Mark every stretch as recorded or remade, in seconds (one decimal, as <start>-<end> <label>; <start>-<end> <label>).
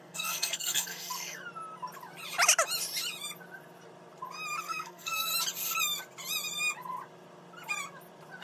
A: 0.0-1.4 remade; 1.4-4.6 recorded; 4.6-5.3 remade; 5.3-8.4 recorded